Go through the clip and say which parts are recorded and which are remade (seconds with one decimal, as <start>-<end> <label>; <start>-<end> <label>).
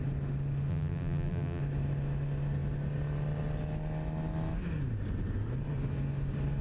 0.0-0.7 recorded; 0.7-1.6 remade; 1.6-6.6 recorded